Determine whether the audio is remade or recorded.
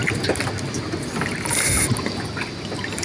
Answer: recorded